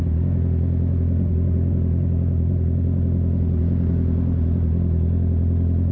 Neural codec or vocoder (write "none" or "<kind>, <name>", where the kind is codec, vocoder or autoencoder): none